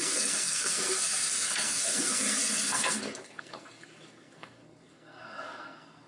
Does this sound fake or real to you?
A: fake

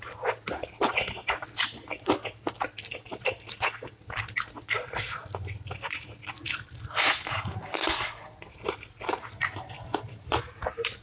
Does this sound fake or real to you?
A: real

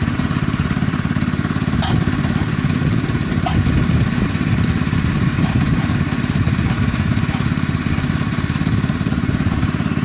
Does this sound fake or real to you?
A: fake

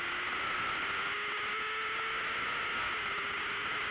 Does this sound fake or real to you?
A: real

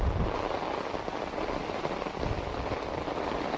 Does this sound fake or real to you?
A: real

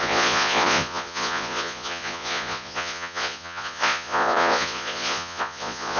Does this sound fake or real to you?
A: fake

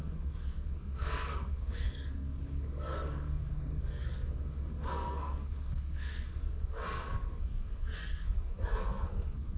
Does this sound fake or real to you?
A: fake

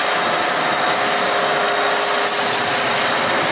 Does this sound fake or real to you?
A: real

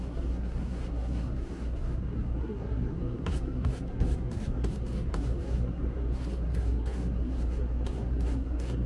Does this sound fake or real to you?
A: fake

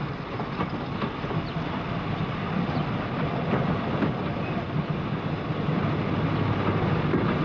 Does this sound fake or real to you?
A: real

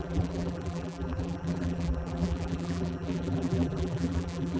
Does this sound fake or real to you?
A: fake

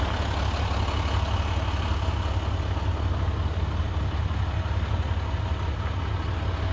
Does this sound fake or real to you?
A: real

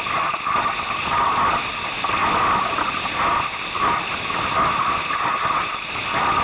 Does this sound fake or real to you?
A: real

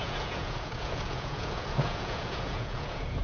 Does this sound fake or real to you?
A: fake